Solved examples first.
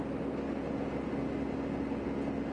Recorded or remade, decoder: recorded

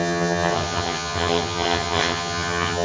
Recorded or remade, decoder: remade, vocoder, HiFi-GAN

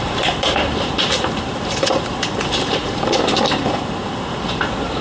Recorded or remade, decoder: remade, vocoder, BigVGAN v2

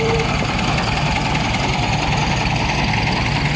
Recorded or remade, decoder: recorded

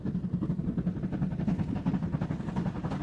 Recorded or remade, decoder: recorded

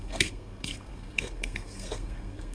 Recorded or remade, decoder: remade, codec, SNAC